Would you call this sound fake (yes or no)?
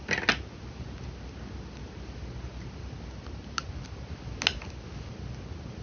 no